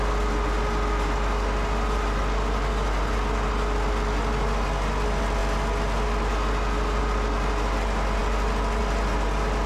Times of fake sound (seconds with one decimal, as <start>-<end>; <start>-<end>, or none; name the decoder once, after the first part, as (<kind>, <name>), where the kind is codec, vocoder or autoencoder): none